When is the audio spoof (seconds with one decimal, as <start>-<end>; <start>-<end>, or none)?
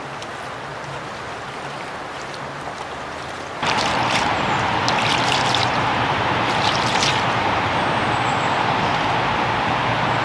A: 0.7-4.8; 5.6-7.8